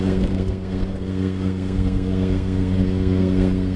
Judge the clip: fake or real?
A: fake